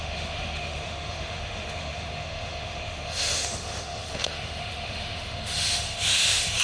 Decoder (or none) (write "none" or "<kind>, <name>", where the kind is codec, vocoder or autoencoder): autoencoder, DAC-VAE